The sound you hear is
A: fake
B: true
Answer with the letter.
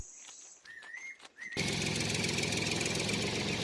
B